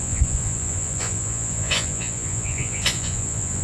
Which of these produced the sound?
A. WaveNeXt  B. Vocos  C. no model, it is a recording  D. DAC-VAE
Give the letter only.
B